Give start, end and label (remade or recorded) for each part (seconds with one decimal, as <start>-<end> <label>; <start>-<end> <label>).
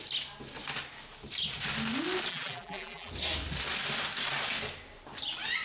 0.0-2.3 recorded; 2.3-3.1 remade; 3.1-5.6 recorded